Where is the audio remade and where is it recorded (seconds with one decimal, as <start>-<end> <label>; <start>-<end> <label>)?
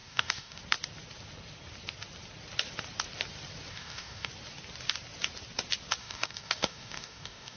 0.0-0.6 remade; 0.6-3.7 recorded; 3.7-4.3 remade; 4.3-6.0 recorded; 6.0-7.6 remade